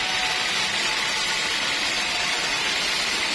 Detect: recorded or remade recorded